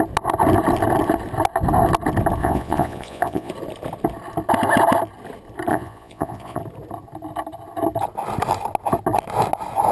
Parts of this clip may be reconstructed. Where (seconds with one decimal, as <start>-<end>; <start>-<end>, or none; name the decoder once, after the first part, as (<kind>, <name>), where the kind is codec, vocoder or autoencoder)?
2.4-3.5 (vocoder, Vocos); 5.7-6.6